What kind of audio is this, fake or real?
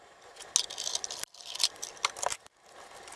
real